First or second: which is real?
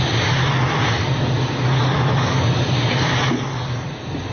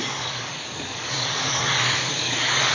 first